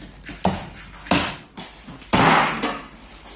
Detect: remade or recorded recorded